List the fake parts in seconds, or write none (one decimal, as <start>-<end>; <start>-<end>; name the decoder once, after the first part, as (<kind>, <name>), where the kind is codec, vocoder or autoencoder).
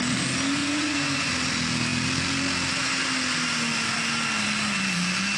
0.6-1.3 (vocoder, Vocos)